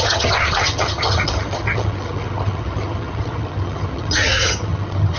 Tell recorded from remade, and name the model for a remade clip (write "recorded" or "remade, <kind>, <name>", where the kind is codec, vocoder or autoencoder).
remade, vocoder, HiFi-GAN